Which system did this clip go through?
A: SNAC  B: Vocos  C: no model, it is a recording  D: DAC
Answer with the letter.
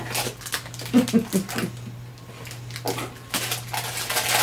C